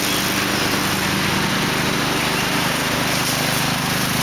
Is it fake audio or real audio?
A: real